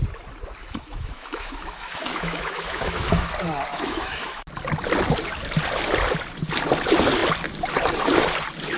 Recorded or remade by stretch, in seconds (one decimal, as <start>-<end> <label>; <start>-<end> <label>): 0.0-0.6 recorded; 0.6-3.3 remade; 3.3-3.7 recorded; 3.7-4.5 remade; 4.5-8.8 recorded